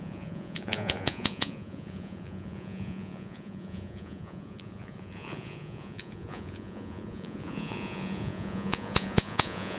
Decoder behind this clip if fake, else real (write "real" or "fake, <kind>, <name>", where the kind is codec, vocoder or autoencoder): fake, vocoder, Vocos